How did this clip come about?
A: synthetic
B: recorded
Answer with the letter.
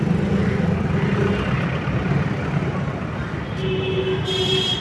B